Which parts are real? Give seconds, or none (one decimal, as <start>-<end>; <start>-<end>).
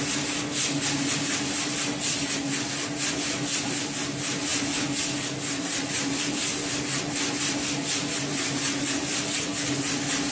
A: 0.0-10.3